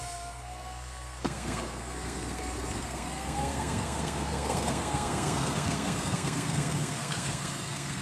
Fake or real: fake